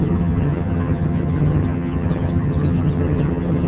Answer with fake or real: fake